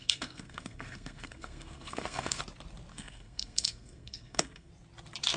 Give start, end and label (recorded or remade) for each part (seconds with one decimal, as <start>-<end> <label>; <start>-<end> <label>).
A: 0.0-2.4 remade; 2.4-2.9 recorded; 2.9-4.7 remade; 4.7-5.4 recorded